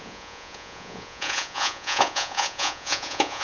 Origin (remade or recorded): remade